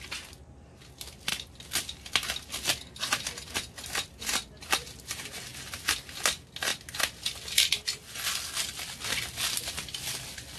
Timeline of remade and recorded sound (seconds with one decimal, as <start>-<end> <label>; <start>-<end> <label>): 0.0-10.6 recorded